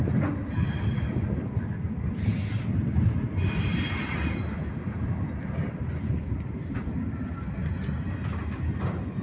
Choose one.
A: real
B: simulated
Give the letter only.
A